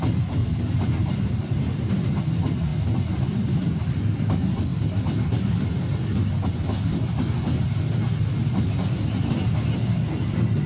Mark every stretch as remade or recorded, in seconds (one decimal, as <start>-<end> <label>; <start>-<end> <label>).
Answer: 0.0-0.4 recorded; 0.4-1.9 remade; 1.9-2.7 recorded; 2.7-3.8 remade; 3.8-10.7 recorded